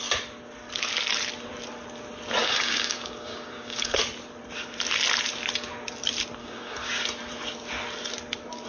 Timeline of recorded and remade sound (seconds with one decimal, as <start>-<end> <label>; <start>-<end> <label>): 0.0-2.4 recorded; 2.4-4.0 remade; 4.0-6.4 recorded; 6.4-6.9 remade; 6.9-8.7 recorded